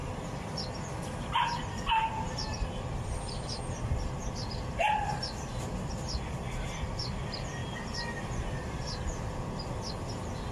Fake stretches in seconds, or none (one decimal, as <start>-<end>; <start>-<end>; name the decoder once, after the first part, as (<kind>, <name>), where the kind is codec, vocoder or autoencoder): 0.0-1.1 (vocoder, BigVGAN v2); 2.5-6.9

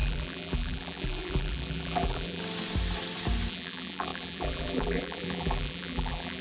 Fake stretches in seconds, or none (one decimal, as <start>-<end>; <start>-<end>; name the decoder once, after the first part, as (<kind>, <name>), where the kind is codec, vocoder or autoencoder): 0.0-2.4 (vocoder, BigVGAN v2); 3.5-6.4

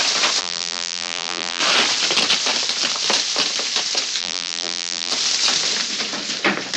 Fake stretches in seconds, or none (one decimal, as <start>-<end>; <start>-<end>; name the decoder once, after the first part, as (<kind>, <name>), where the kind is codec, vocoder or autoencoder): 0.4-1.6 (vocoder, BigVGAN v2); 4.2-5.1

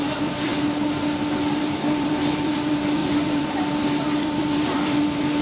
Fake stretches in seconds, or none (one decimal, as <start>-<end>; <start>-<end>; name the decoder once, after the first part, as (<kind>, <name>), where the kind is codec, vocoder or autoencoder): 0.0-0.5 (vocoder, BigVGAN v2); 1.6-5.4